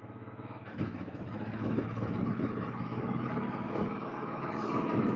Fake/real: fake